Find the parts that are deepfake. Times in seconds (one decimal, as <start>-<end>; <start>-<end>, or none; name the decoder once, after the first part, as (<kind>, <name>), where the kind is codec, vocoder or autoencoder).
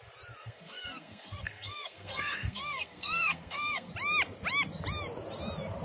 0.4-3.9 (codec, SNAC)